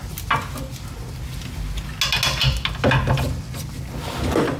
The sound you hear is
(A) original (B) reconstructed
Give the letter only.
A